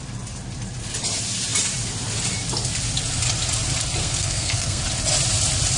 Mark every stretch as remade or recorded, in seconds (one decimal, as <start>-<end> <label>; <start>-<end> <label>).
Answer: 0.0-4.0 recorded; 4.0-4.8 remade; 4.8-5.8 recorded